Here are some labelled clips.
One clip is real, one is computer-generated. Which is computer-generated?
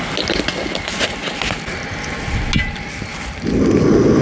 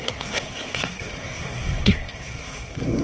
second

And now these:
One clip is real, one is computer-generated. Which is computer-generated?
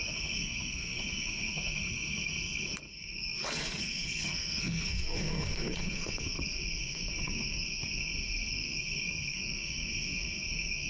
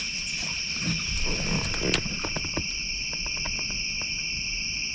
first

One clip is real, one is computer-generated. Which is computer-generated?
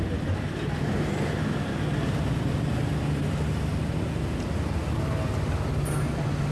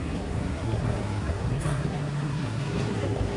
second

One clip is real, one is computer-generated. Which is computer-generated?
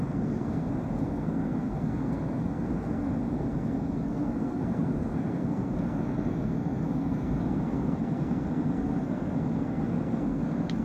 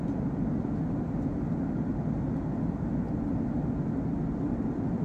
first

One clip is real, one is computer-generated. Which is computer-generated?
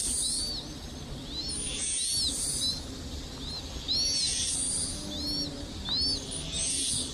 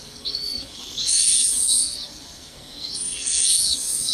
second